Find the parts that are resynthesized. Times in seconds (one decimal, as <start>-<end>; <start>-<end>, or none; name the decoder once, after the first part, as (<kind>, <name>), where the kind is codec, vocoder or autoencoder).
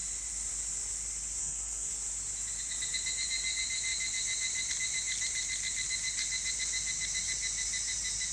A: 1.4-1.9 (codec, SNAC)